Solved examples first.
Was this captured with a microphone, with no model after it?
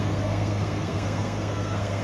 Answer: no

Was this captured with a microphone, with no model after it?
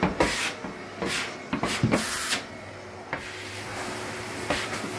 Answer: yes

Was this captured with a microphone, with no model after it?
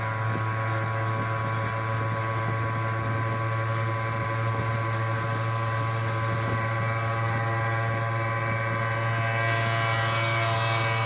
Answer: yes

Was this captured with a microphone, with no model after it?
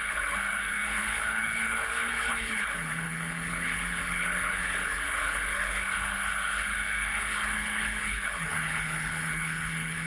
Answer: no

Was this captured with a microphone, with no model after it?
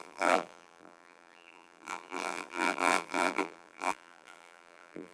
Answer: no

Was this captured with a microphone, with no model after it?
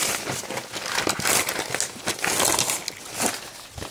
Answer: yes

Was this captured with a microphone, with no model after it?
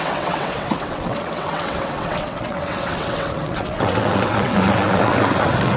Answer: no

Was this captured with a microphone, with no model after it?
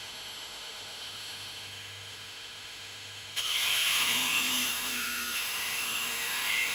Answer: no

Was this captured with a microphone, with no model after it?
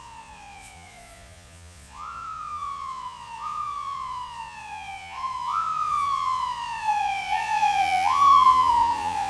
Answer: no